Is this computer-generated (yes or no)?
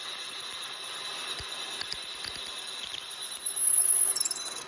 no